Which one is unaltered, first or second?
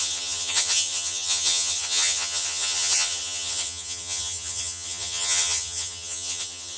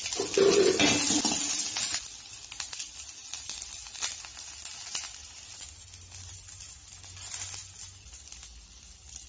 second